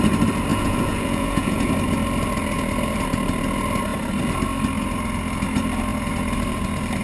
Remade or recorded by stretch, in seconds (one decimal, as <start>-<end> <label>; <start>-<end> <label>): 0.0-0.5 recorded; 0.5-1.7 remade; 1.7-7.0 recorded